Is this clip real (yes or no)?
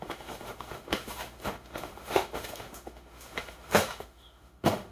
no